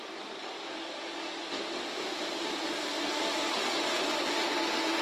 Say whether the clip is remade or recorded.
remade